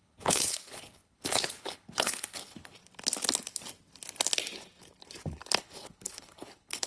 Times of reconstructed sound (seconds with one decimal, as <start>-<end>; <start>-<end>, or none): 0.0-2.8; 5.6-6.9

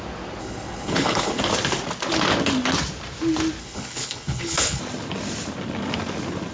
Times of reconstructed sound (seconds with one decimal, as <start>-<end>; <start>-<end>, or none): 0.4-1.4; 3.6-4.8

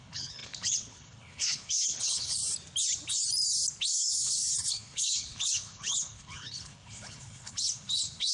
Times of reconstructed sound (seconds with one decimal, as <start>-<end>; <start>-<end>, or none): 0.0-2.4; 3.8-8.3

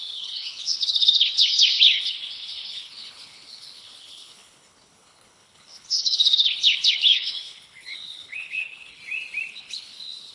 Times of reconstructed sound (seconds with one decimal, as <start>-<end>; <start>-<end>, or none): 0.0-9.0; 9.5-10.3

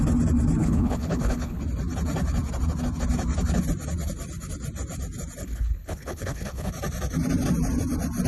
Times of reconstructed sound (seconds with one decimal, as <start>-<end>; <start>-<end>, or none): 0.6-1.6; 5.4-6.7

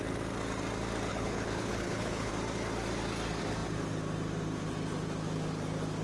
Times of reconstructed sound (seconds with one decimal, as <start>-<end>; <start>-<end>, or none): 1.1-2.3

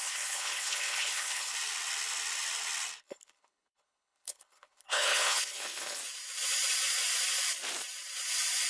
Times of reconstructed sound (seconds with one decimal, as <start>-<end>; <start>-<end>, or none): 0.0-1.5; 3.0-6.0